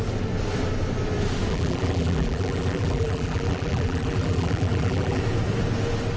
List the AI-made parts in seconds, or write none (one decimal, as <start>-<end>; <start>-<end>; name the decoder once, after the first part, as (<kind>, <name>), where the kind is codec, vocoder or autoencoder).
1.5-5.2 (vocoder, BigVGAN v2)